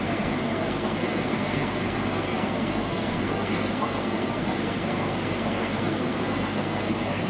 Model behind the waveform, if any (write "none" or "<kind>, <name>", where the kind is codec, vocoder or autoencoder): codec, SNAC